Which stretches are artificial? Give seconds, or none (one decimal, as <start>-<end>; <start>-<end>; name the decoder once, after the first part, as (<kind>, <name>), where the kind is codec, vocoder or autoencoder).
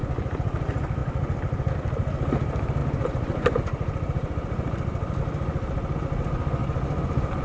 2.8-5.2 (vocoder, BigVGAN v2); 6.6-7.4